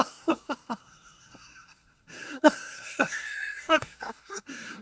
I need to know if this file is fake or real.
fake